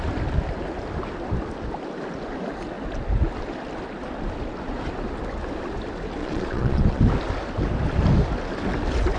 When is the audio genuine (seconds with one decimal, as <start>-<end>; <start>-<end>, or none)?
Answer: 0.0-6.2; 7.0-9.2